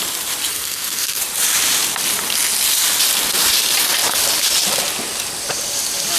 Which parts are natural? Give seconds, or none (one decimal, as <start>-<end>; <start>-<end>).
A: 0.0-0.5; 1.2-6.2